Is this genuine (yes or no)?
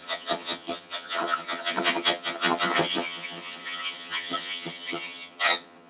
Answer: no